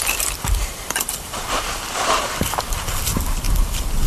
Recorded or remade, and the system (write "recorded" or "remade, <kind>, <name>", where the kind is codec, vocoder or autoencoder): remade, vocoder, BigVGAN v2